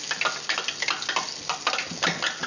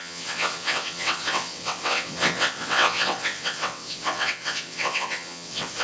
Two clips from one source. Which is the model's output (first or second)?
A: second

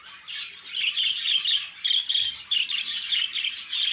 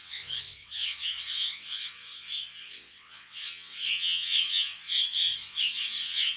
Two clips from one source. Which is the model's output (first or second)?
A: second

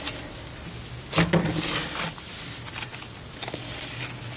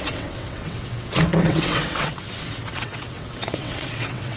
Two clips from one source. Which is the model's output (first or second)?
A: second